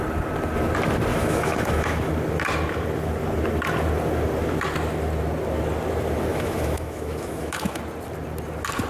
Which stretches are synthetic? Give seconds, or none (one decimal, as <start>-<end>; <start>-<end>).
1.1-2.1; 6.3-7.8